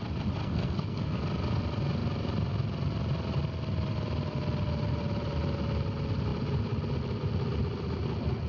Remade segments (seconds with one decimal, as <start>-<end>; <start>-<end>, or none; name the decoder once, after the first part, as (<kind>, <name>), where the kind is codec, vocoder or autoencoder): 0.4-1.2 (codec, SNAC)